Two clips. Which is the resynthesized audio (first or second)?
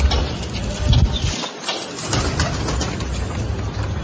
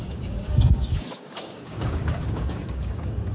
second